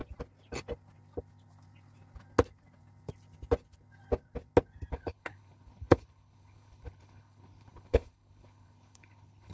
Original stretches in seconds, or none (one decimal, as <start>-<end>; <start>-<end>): 0.0-4.9